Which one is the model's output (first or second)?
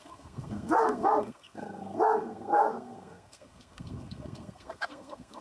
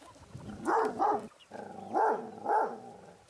first